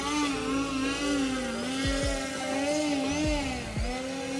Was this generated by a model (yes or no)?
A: no